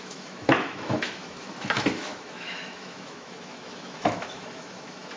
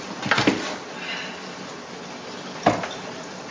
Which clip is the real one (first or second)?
second